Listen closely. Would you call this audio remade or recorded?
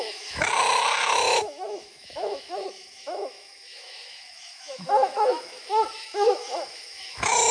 remade